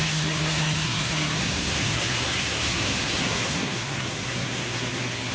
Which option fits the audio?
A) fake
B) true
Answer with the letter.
A